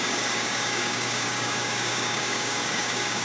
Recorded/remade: remade